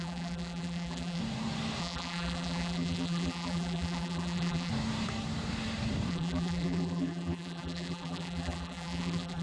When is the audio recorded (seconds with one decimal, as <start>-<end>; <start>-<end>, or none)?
1.2-1.8; 4.7-6.1